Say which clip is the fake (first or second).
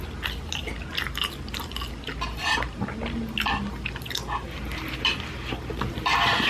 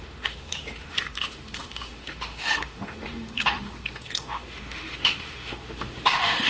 second